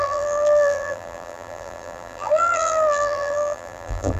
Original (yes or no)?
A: no